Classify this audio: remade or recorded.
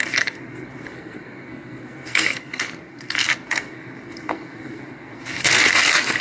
remade